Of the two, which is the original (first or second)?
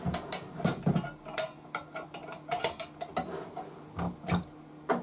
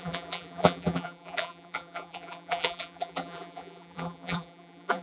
first